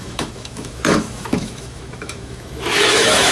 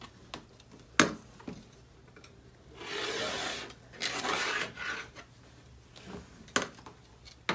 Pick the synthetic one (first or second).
first